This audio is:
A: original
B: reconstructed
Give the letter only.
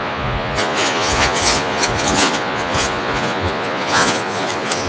B